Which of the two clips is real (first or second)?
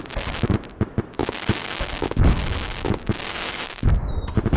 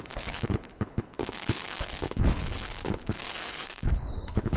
first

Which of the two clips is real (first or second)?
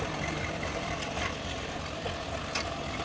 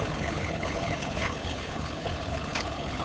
first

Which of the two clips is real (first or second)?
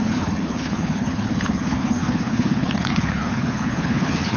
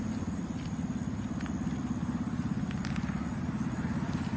second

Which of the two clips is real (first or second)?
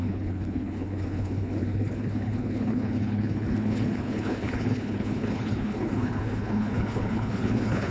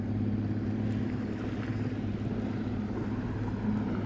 second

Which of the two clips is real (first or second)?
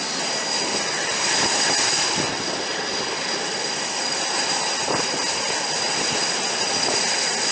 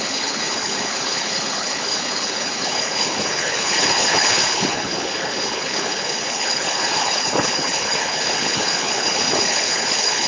first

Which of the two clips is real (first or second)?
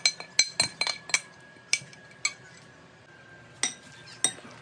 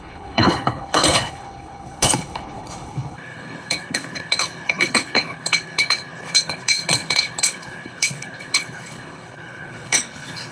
first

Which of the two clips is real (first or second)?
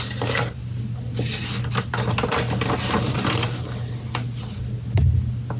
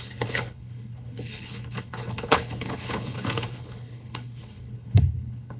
first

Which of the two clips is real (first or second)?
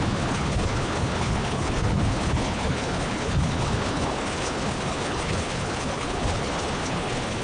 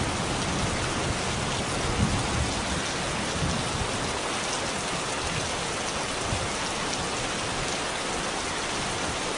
second